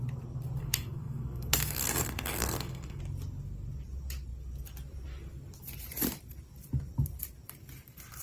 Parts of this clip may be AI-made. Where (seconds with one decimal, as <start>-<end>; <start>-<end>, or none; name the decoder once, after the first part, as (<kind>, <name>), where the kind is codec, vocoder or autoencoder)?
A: 0.6-3.0 (codec, SNAC)